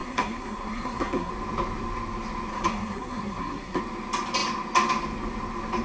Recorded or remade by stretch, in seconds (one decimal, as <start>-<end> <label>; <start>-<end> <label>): 0.0-1.3 remade; 1.3-2.5 recorded; 2.5-3.8 remade; 3.8-5.8 recorded